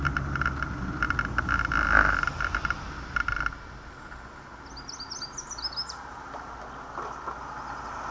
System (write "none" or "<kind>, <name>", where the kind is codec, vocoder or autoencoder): none